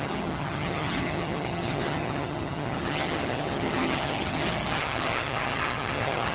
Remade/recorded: remade